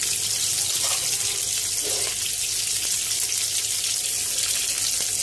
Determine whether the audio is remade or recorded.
recorded